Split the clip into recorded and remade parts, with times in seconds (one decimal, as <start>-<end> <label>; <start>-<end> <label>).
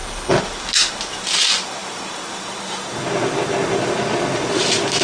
0.0-5.0 recorded